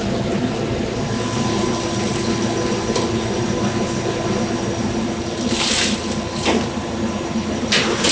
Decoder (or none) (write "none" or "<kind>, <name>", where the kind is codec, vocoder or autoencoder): none